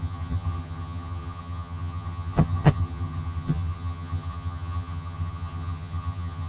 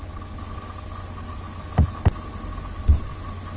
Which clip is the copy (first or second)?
first